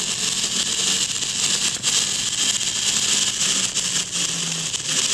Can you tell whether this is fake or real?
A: real